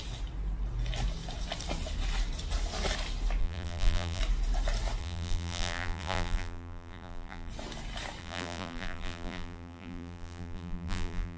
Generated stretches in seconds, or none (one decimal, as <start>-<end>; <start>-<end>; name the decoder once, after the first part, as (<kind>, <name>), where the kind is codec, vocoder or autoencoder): 3.4-4.2 (vocoder, BigVGAN v2); 5.0-7.5; 8.2-11.4